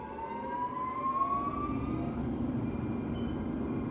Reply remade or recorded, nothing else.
recorded